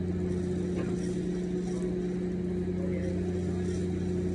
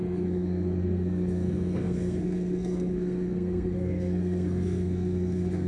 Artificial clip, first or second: second